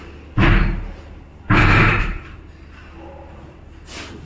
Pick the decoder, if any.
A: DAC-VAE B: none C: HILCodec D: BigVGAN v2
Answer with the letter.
B